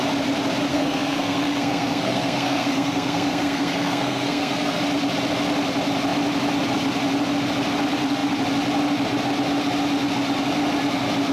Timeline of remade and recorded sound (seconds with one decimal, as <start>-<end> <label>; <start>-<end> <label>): 0.0-0.7 recorded; 0.7-4.8 remade; 4.8-11.3 recorded